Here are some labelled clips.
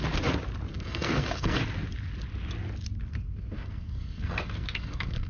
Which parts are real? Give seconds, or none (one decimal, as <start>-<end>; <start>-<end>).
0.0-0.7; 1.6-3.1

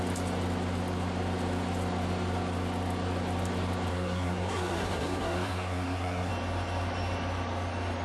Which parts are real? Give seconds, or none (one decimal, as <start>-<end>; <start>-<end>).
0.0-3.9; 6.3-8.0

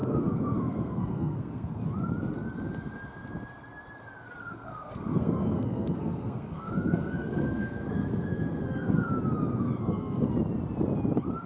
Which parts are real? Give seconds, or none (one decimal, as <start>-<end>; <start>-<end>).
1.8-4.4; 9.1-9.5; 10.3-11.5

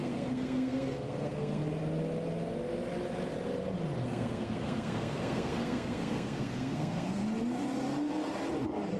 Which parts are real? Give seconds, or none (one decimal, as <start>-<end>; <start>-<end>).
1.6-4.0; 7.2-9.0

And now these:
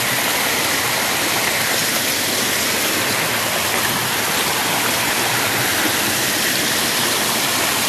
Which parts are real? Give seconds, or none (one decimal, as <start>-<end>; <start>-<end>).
0.0-7.9

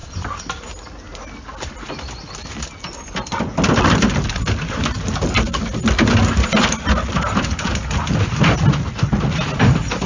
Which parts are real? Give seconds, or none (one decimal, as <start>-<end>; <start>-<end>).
0.0-10.1